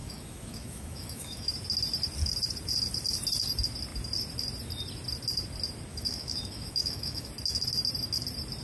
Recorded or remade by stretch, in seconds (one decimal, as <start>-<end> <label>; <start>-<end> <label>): 0.0-1.5 remade; 1.5-5.9 recorded; 5.9-7.3 remade; 7.3-8.6 recorded

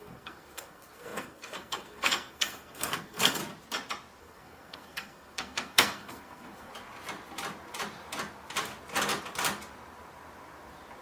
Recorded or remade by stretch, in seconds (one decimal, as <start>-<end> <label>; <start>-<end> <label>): 0.0-3.4 remade; 3.4-4.2 recorded; 4.2-6.7 remade; 6.7-11.0 recorded

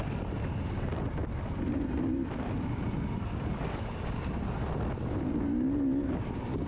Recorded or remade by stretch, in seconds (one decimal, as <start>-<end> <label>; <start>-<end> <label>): 0.0-6.7 recorded

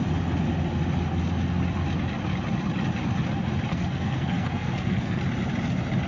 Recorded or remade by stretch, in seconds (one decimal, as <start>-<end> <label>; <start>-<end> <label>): 0.0-3.7 recorded; 3.7-5.2 remade; 5.2-6.1 recorded

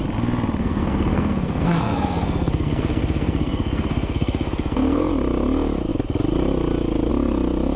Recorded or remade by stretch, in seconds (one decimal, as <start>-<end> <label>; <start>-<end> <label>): 0.0-0.6 recorded; 0.6-5.1 remade; 5.1-7.8 recorded

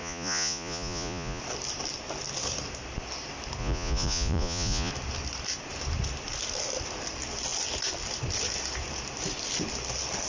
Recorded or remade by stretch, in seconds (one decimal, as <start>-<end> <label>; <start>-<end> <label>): 0.0-1.4 remade; 1.4-3.6 recorded; 3.6-4.9 remade; 4.9-10.3 recorded